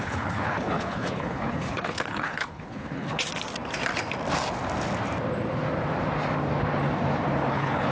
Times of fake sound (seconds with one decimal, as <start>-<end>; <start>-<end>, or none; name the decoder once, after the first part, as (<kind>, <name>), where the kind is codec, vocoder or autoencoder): 0.0-3.3 (codec, HILCodec); 7.5-7.9